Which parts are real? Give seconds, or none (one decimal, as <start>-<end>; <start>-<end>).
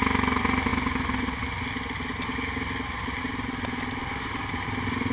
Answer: 0.0-5.1